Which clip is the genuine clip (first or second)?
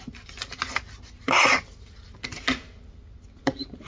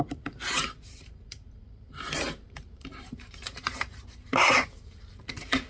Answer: first